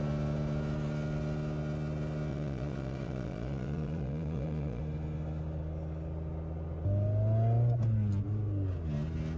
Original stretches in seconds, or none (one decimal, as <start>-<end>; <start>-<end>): 0.0-2.3; 4.8-9.4